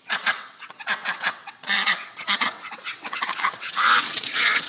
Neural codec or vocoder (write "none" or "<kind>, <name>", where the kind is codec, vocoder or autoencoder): vocoder, WaveNeXt